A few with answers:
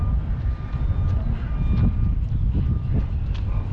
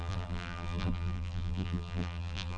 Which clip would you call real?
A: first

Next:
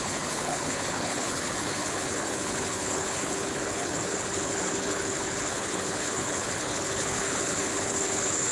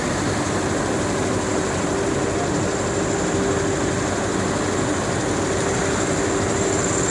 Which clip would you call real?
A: second